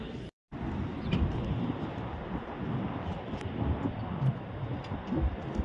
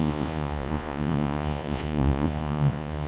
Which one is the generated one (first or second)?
second